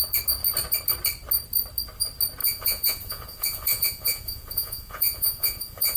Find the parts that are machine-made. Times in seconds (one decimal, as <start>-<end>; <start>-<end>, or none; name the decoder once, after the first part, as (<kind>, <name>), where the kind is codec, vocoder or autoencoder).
2.4-6.0 (vocoder, Vocos)